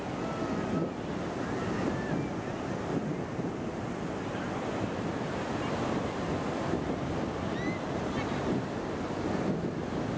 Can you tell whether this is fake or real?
real